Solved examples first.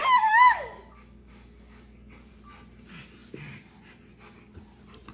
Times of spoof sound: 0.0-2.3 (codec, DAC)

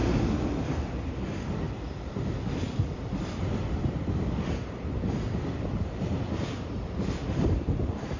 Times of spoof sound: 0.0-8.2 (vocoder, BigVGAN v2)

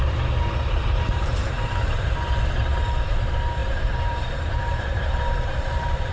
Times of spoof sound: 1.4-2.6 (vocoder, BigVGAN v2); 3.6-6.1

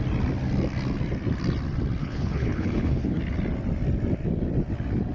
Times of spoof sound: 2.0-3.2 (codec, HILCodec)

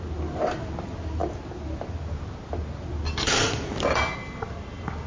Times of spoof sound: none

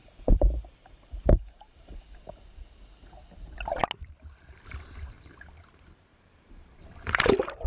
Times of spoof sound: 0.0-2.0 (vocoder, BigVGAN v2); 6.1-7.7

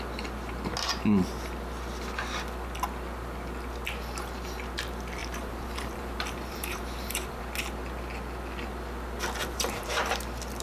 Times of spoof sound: 5.2-7.4 (vocoder, BigVGAN v2); 9.4-10.1